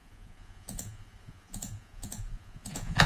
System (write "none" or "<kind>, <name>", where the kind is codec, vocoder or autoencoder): vocoder, Vocos